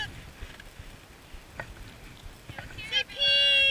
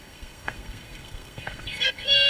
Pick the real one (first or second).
first